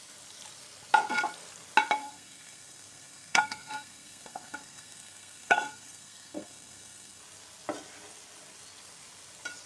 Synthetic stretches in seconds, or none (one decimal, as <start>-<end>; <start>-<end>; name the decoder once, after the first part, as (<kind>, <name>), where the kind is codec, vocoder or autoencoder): 2.0-7.2 (codec, SNAC)